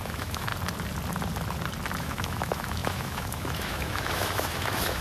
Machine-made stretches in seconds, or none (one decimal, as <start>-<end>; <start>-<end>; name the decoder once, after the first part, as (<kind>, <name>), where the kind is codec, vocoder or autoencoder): 0.0-0.5 (autoencoder, DAC-VAE); 2.0-5.0